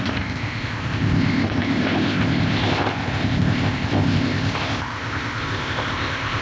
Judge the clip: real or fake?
fake